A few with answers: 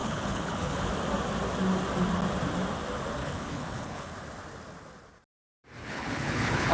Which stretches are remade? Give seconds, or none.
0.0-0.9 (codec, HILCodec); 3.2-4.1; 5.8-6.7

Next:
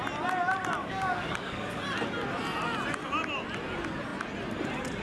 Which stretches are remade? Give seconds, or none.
0.8-1.8 (codec, DAC)

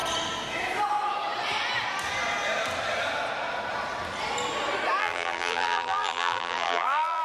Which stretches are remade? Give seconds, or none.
5.0-7.2 (vocoder, BigVGAN v2)

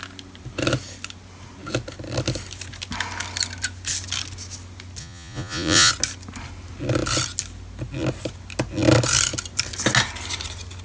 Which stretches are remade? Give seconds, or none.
5.0-5.9 (vocoder, Vocos)

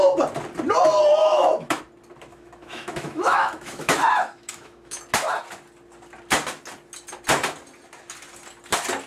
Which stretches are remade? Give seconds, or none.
1.2-1.8 (autoencoder, DAC-VAE); 2.3-5.0

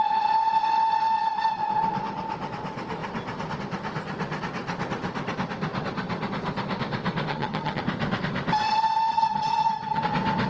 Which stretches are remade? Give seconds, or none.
7.3-7.8 (vocoder, HiFi-GAN); 9.1-10.0